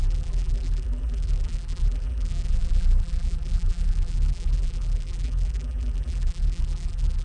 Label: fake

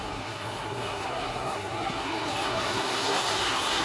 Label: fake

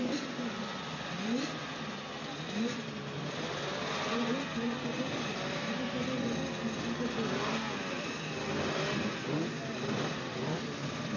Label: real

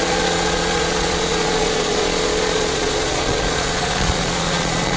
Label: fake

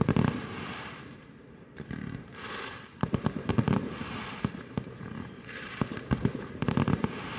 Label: fake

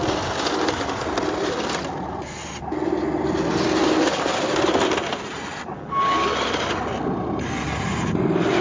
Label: real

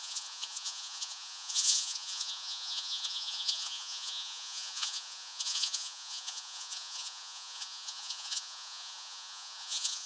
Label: fake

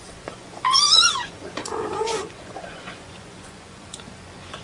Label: fake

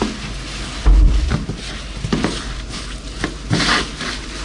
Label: real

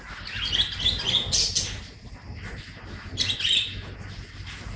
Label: real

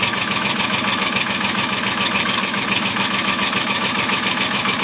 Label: fake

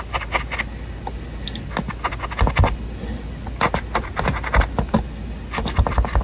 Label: real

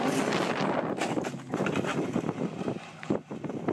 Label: real